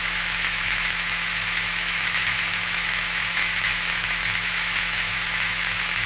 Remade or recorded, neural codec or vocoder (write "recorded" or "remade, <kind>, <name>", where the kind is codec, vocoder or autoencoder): remade, autoencoder, DAC-VAE